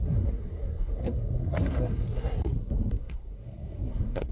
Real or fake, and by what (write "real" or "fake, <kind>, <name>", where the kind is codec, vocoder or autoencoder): fake, codec, SNAC